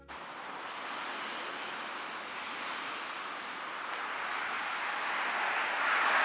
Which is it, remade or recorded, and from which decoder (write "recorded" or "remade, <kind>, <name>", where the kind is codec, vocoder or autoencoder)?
recorded